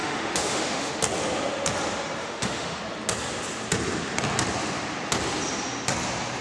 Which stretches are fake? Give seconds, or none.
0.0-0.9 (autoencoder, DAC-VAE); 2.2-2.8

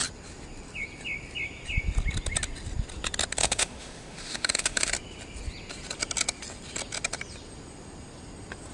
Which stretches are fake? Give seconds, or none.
3.4-4.9 (autoencoder, DAC-VAE)